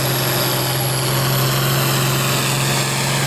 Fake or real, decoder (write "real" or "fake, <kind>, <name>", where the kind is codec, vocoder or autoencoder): real